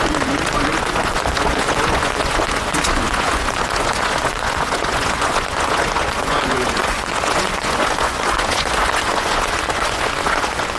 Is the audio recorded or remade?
remade